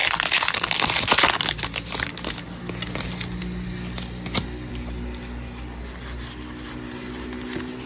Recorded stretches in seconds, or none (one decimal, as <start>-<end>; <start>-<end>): 0.0-7.9